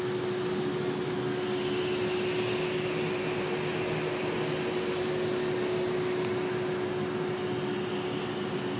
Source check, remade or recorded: recorded